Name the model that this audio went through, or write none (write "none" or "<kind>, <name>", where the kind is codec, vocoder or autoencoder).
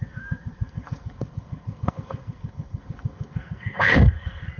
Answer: codec, SNAC